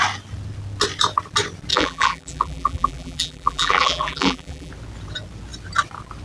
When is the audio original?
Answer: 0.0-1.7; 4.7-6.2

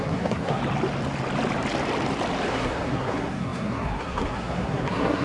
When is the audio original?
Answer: 0.6-2.5

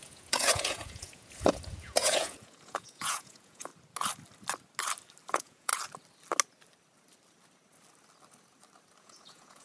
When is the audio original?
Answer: 3.7-5.3; 5.7-9.0

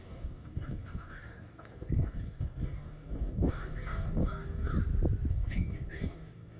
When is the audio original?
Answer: 4.7-5.3

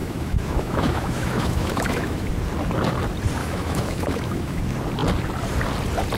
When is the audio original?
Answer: 2.3-3.4; 4.6-6.2

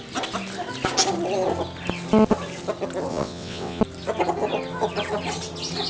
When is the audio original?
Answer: 0.0-3.1; 3.8-5.9